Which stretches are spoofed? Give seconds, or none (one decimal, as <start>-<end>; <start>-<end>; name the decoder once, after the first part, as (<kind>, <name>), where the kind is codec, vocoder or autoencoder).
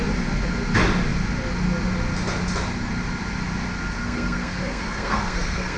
4.0-5.8 (codec, SNAC)